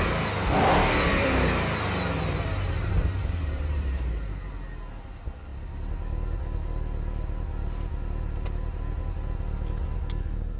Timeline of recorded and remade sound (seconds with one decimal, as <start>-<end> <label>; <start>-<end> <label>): 0.0-1.2 recorded; 1.2-4.5 remade; 4.5-10.6 recorded